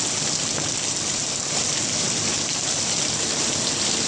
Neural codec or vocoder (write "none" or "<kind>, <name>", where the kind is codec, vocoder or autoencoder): none